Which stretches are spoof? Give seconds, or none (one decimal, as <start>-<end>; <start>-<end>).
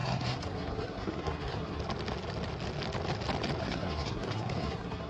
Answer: 0.0-1.8; 3.6-5.1